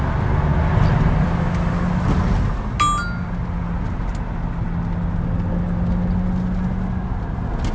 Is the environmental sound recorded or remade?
recorded